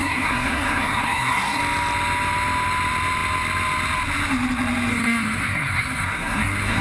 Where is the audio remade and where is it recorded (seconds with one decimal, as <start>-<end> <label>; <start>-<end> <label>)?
0.0-1.6 remade; 1.6-4.9 recorded; 4.9-6.8 remade